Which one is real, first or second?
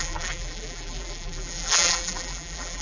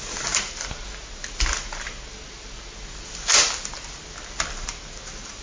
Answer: second